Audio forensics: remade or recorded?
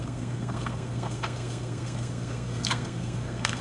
remade